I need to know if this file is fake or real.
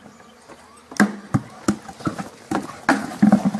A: real